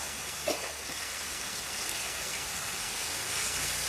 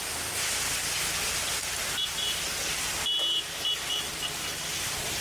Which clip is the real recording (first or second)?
second